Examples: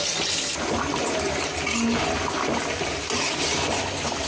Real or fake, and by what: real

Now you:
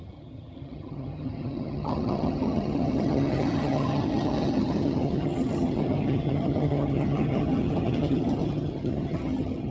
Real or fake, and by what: fake, vocoder, HiFi-GAN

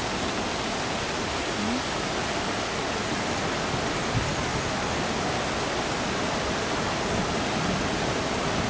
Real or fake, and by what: real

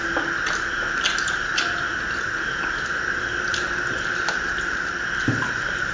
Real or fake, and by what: real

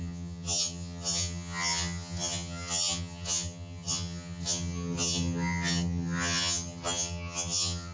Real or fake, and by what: fake, vocoder, HiFi-GAN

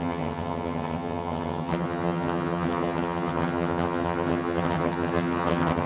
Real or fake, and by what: fake, vocoder, HiFi-GAN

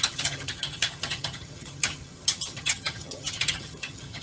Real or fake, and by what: fake, vocoder, HiFi-GAN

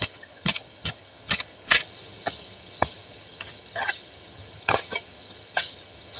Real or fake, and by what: fake, vocoder, HiFi-GAN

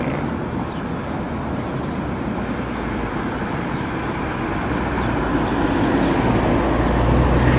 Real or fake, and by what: real